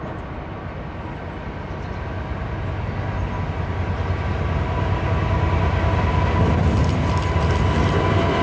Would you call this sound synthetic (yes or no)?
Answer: no